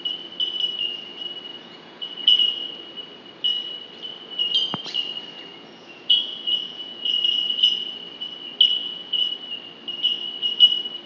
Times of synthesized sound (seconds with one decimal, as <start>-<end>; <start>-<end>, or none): 1.5-2.7; 5.5-7.9; 8.8-9.3